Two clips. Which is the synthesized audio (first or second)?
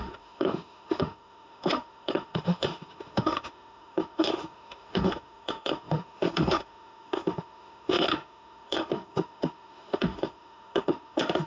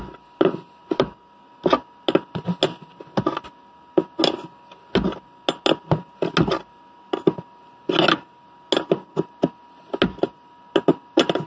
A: first